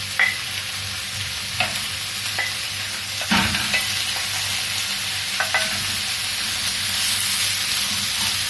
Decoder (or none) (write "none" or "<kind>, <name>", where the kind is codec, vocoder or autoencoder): none